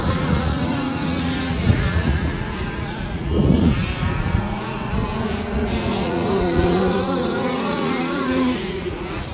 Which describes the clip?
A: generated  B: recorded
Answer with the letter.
A